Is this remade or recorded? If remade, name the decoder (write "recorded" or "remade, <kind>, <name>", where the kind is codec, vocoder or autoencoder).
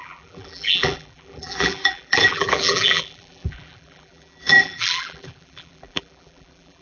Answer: remade, vocoder, BigVGAN v2